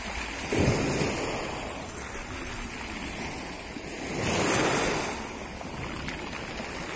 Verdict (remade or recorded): recorded